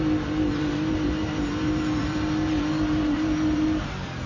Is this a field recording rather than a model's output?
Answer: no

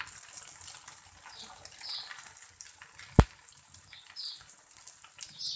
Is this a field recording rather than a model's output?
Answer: yes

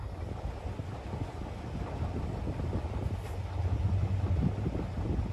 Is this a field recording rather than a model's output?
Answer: yes